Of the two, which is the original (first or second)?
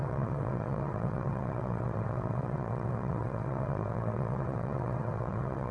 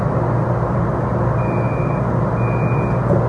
second